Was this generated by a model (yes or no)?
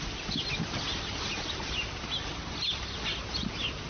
no